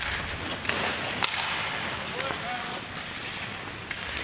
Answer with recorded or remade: recorded